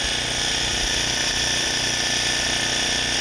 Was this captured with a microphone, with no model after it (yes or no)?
yes